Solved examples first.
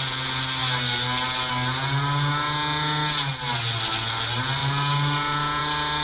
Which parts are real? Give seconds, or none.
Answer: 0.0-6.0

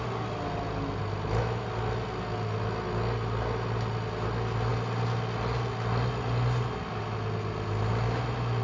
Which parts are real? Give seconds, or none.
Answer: 0.0-8.6

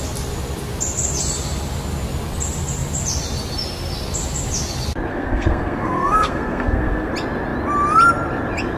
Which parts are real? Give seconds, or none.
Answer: 0.0-5.1; 7.1-8.8